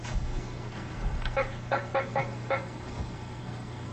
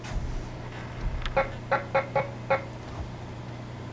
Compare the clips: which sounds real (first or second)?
second